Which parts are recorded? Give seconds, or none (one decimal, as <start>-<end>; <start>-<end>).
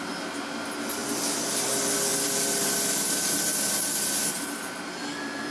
0.0-5.5